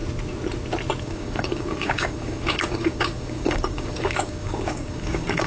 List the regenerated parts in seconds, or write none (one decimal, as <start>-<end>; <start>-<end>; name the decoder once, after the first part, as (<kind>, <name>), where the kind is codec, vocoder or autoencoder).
1.0-5.5 (codec, DAC)